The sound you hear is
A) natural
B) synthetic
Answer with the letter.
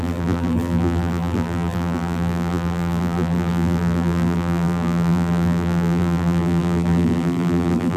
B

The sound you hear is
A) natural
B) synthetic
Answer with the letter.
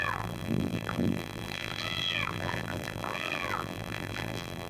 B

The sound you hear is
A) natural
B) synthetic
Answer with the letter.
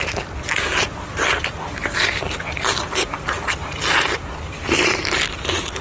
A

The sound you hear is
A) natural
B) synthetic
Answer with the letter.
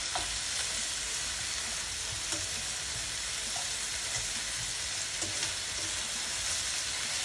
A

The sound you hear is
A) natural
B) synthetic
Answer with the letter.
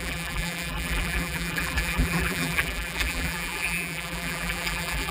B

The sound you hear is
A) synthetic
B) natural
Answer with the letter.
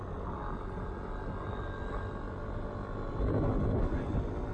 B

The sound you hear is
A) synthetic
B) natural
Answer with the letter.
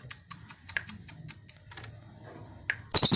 B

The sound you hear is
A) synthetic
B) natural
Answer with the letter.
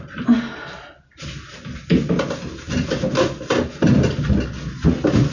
B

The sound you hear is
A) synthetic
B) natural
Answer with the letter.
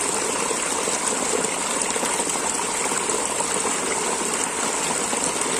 B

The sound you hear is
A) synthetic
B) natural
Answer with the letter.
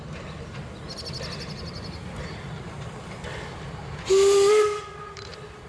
B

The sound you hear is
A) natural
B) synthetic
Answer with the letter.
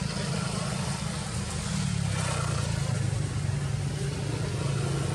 A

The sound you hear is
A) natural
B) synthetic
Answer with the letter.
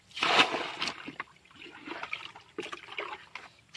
A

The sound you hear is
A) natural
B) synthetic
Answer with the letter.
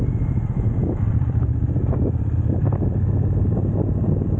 B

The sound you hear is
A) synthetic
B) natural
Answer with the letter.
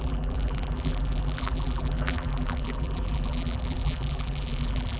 A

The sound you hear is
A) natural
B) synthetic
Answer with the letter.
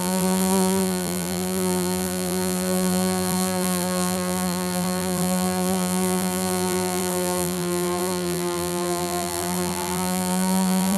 B